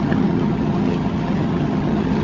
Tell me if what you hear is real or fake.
fake